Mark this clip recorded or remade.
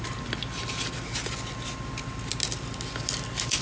recorded